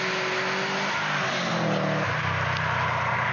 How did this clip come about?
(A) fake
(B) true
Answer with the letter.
B